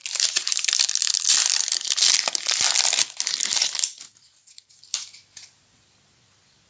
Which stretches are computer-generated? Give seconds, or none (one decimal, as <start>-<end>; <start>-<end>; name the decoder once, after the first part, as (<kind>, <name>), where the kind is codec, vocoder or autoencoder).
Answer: none